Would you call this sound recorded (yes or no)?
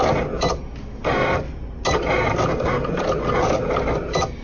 yes